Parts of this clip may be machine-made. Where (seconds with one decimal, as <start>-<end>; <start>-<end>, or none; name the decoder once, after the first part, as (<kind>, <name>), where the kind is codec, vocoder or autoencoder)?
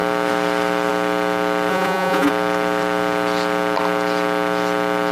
1.7-2.3 (vocoder, Vocos)